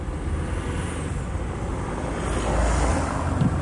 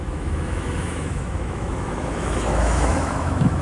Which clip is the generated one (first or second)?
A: second